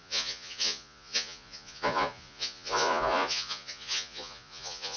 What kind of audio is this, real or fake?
fake